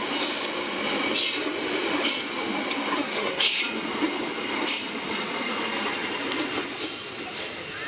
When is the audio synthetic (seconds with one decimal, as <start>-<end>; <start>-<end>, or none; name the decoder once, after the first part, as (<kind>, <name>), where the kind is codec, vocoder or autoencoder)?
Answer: 2.9-3.6 (codec, SNAC)